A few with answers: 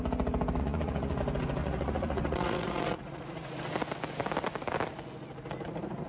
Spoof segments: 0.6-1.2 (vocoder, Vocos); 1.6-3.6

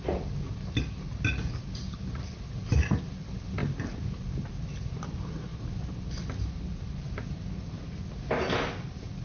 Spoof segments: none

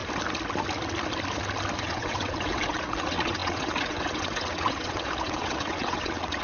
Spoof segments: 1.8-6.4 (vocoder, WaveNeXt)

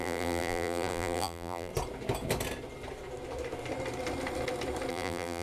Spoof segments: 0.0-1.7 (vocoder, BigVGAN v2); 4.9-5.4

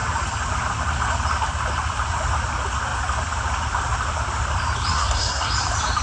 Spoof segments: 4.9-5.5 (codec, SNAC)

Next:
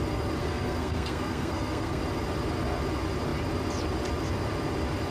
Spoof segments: 0.4-2.0 (codec, SNAC)